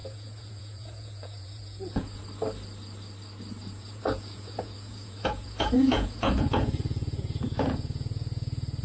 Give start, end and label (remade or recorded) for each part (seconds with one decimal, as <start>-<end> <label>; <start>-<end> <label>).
0.0-2.2 remade; 2.2-3.6 recorded; 3.6-8.8 remade